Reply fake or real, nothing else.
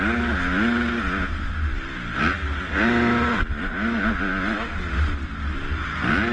real